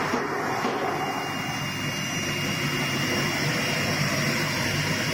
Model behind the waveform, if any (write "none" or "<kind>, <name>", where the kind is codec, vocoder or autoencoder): none